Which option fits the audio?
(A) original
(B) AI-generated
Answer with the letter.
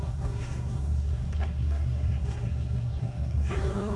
B